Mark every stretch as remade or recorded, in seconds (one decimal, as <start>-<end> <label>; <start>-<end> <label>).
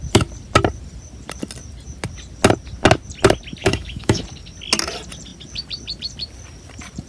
0.0-3.6 recorded; 3.6-4.2 remade; 4.2-7.1 recorded